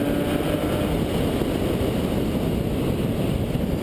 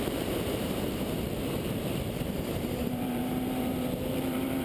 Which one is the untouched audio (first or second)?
first